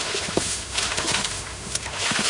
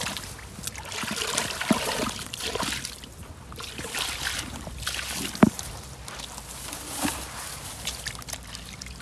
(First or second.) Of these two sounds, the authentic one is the second